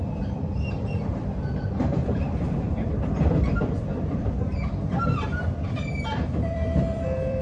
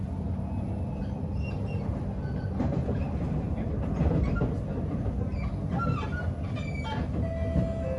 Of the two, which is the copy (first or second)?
first